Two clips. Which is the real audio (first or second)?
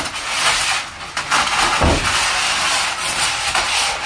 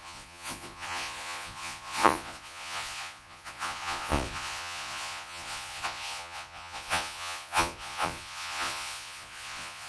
first